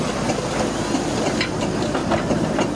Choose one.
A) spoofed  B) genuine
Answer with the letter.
B